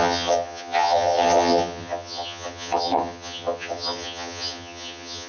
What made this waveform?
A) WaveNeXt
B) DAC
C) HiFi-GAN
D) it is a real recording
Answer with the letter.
C